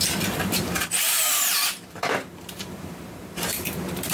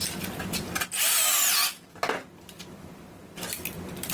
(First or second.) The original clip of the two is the second